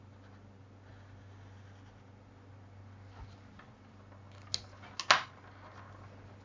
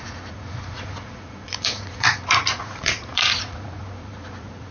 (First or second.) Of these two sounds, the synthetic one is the second